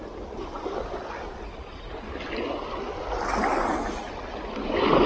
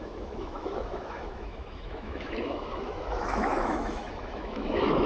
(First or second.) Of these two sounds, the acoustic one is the first